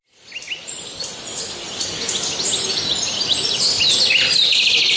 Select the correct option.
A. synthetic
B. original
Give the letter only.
B